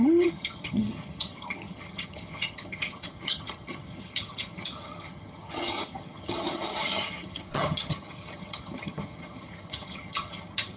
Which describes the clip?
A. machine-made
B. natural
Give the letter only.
A